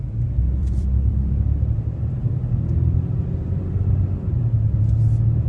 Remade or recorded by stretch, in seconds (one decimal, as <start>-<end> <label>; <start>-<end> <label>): 0.0-0.6 recorded; 0.6-3.9 remade; 3.9-5.5 recorded